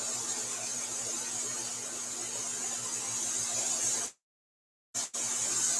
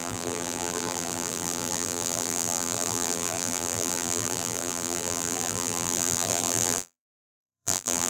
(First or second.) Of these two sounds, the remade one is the second